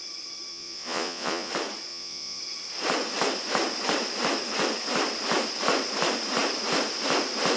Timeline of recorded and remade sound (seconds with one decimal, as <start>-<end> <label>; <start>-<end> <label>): 0.0-0.5 recorded; 0.5-1.5 remade; 1.5-1.9 recorded; 1.9-2.4 remade; 2.4-7.6 recorded